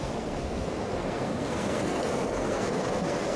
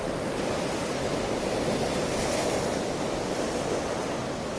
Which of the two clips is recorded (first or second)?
second